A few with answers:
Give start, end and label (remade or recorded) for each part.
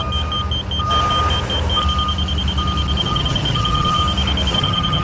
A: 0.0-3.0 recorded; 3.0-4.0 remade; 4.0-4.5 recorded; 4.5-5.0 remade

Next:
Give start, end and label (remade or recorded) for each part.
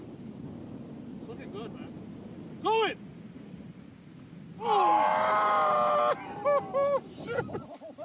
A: 0.0-8.0 recorded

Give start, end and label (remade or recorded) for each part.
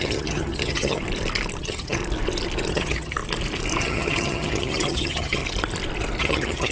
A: 0.0-1.0 remade; 1.0-1.6 recorded; 1.6-2.0 remade; 2.0-2.7 recorded; 2.7-3.2 remade; 3.2-3.8 recorded; 3.8-5.4 remade; 5.4-6.2 recorded; 6.2-6.7 remade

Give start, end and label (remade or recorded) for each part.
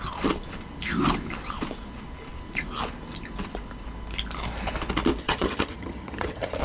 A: 0.0-5.2 recorded; 5.2-6.6 remade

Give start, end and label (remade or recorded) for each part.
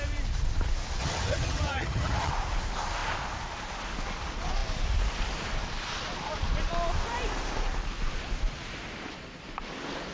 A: 0.0-1.0 recorded; 1.0-2.3 remade; 2.3-10.1 recorded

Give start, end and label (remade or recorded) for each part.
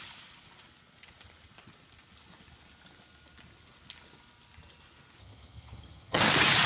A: 0.0-5.2 recorded; 5.2-6.2 remade; 6.2-6.7 recorded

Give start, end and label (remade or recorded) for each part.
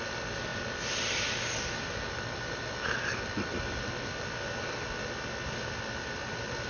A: 0.0-6.7 recorded